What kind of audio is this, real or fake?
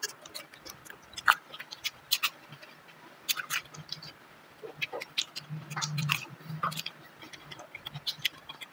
real